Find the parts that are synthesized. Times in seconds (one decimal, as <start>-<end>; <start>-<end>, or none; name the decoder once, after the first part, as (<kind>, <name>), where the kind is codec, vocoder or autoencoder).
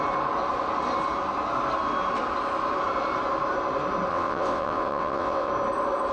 4.1-5.5 (vocoder, WaveNeXt)